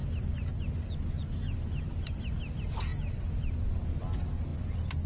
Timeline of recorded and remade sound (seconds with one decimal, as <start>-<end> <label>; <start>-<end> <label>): 0.0-5.1 recorded